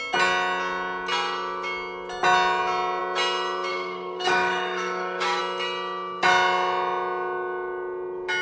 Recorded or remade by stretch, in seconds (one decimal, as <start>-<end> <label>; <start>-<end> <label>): 0.0-3.7 recorded; 3.7-5.4 remade; 5.4-8.4 recorded